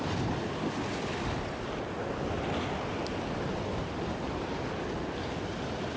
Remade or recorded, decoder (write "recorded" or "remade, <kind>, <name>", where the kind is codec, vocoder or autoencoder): recorded